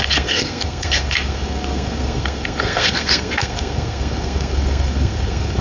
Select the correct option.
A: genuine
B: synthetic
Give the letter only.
B